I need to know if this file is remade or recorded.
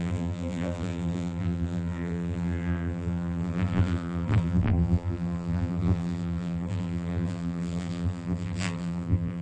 remade